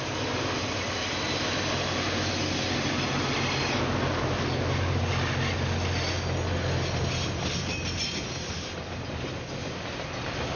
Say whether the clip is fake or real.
real